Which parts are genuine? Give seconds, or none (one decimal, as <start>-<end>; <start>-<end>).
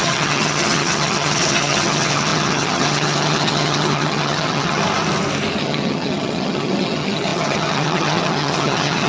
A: 4.8-5.6